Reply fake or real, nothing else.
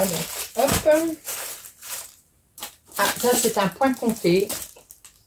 fake